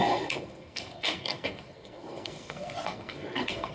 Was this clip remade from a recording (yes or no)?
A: yes